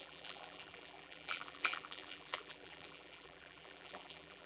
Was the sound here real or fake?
fake